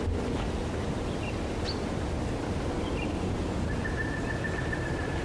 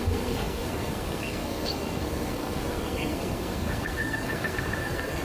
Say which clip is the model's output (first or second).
second